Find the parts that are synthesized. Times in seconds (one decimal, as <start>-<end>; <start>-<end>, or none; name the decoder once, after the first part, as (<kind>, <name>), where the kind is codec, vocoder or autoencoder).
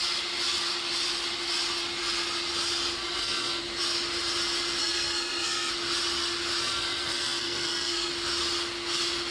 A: 3.0-3.6 (codec, SNAC); 4.8-5.7; 6.6-8.1